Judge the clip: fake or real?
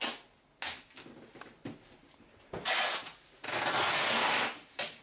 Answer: real